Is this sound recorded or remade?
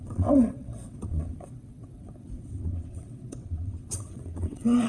remade